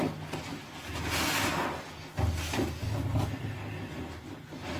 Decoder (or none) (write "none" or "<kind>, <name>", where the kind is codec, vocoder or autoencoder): none